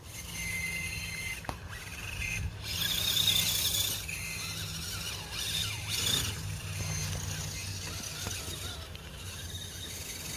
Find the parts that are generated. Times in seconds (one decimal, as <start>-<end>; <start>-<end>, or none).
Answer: none